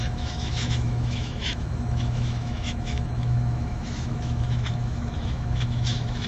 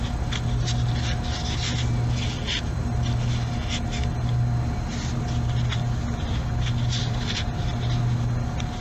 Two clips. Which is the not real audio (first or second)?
first